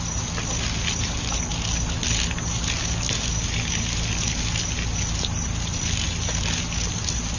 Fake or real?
real